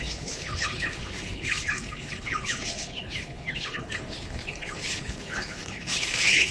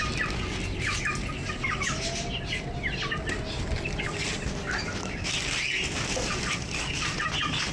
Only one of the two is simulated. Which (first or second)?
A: first